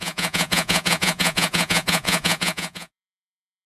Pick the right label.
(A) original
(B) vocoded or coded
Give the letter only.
B